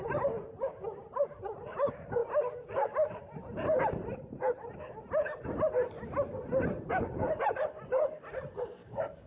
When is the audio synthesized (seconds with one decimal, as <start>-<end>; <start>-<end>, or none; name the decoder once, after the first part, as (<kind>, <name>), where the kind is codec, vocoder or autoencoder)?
8.8-9.3 (codec, DAC)